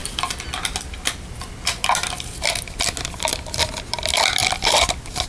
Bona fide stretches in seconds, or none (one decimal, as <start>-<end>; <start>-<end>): 0.0-3.3; 3.9-5.3